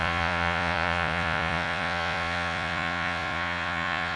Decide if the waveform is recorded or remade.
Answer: remade